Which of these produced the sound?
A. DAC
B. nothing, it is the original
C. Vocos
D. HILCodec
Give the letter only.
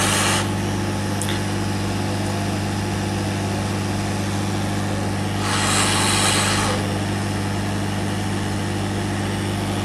B